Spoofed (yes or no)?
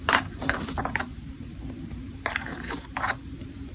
yes